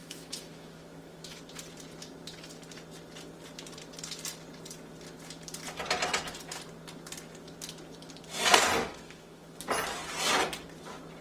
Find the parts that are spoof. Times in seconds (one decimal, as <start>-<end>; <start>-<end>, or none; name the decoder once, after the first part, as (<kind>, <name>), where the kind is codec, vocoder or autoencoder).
0.0-1.4 (autoencoder, DAC-VAE); 8.8-9.6